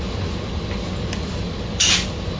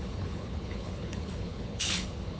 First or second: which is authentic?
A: first